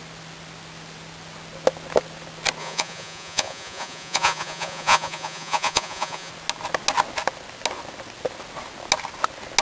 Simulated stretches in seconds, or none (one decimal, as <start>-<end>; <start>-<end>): 2.6-6.3